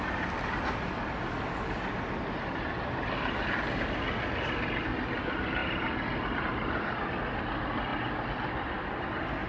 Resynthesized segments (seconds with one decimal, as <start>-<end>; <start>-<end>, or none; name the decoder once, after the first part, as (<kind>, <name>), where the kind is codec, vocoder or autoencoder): none